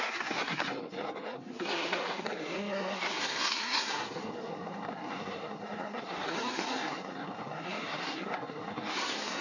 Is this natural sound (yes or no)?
no